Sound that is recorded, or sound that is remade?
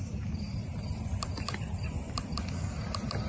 recorded